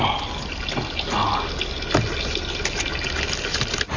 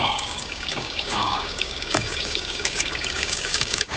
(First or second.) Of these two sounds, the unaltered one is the first